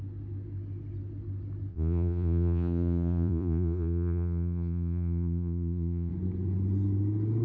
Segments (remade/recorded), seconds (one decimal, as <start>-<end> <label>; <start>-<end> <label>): 0.0-1.7 recorded; 1.7-6.1 remade; 6.1-7.4 recorded